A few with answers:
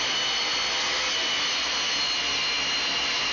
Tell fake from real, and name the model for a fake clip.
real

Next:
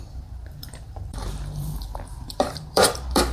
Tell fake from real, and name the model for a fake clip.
fake, vocoder, BigVGAN v2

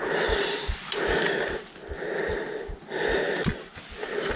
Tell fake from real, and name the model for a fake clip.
real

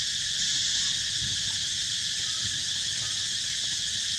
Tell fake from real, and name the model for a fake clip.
real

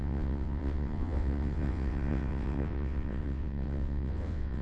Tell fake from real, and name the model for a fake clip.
fake, vocoder, WaveNeXt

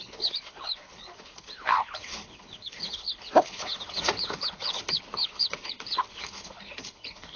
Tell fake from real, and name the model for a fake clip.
fake, codec, HILCodec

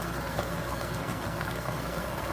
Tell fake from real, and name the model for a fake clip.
fake, codec, SNAC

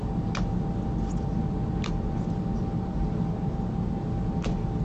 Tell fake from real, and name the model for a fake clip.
real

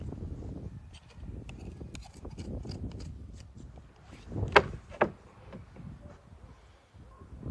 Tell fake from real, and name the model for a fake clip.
real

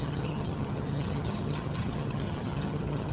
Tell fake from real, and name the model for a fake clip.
fake, vocoder, HiFi-GAN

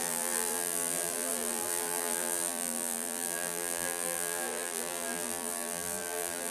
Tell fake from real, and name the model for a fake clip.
fake, vocoder, BigVGAN v2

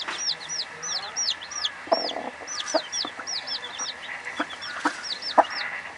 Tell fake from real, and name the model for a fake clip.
real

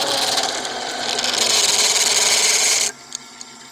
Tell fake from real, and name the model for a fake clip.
real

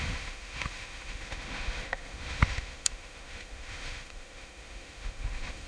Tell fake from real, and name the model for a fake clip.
fake, autoencoder, DAC-VAE